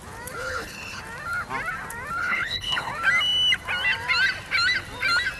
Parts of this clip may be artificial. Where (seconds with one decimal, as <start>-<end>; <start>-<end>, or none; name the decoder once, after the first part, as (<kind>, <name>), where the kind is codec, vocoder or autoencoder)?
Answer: 0.4-1.0 (codec, HILCodec); 2.2-2.9